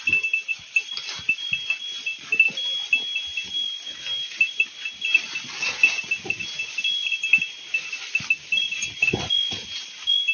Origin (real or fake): real